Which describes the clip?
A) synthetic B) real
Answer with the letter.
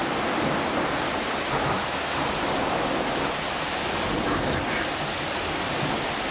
B